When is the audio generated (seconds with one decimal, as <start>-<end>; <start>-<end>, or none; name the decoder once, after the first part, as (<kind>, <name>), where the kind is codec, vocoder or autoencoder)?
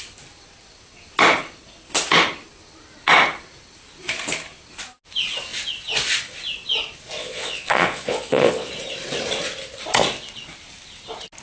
7.2-8.7 (vocoder, Vocos)